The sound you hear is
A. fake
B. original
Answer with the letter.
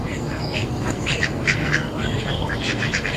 A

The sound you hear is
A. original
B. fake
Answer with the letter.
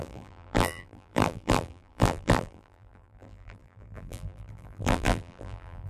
B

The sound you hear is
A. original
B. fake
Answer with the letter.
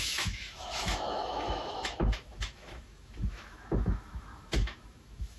B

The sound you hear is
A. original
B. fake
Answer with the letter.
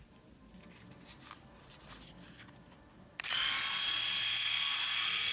A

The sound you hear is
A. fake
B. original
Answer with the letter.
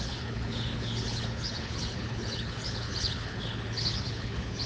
A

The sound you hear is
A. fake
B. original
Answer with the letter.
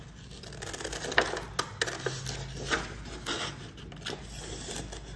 B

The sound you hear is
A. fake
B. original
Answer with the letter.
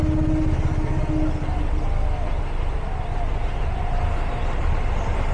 B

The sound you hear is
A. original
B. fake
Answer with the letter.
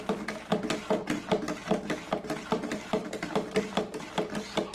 A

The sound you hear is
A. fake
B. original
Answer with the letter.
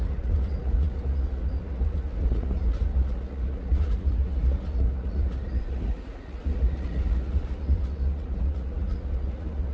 A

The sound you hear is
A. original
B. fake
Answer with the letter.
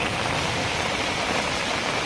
A